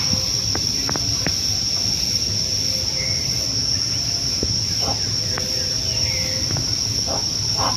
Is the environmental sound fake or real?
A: real